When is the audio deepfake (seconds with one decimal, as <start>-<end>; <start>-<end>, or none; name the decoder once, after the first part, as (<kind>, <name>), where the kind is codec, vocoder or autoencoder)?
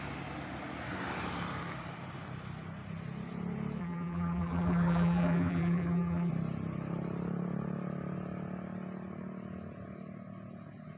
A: 3.8-6.3 (vocoder, BigVGAN v2)